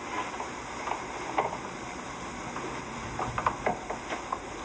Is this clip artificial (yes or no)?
no